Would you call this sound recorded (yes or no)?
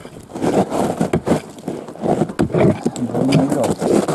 yes